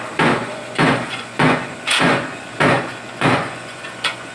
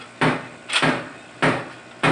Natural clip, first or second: second